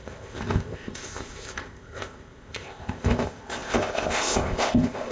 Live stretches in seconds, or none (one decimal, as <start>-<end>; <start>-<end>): none

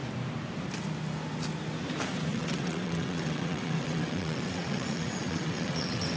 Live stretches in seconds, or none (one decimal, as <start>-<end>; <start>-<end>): 0.0-2.3

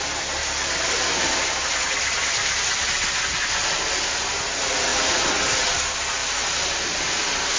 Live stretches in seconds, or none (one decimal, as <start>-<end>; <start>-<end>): 0.0-0.4; 2.6-6.2; 6.7-7.6

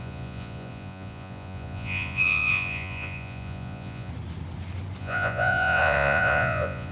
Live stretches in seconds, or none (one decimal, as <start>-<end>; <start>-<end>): 4.1-5.0

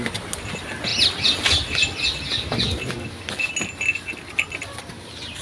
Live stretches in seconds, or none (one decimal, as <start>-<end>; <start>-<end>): 0.0-5.4

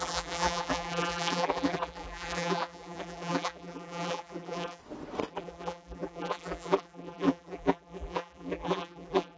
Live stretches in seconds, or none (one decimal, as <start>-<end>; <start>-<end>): 4.8-5.3

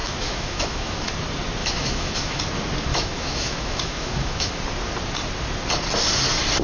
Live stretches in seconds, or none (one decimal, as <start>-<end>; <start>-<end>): 1.1-1.6; 2.4-2.9; 4.5-6.6